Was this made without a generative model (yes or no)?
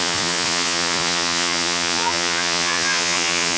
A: no